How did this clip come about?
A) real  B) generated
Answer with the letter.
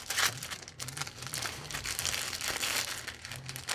A